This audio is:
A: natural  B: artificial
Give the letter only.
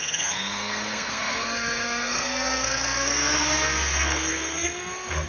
B